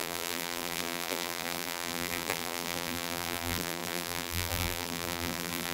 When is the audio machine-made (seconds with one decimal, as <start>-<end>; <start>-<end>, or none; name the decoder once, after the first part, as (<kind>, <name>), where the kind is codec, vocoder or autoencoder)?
0.0-5.7 (vocoder, BigVGAN v2)